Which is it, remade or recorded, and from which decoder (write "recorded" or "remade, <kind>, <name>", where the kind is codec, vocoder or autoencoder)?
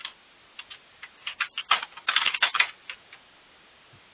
recorded